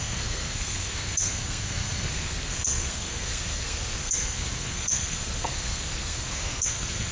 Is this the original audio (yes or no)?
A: no